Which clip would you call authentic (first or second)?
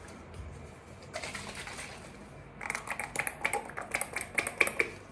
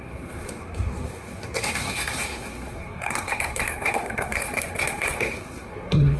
first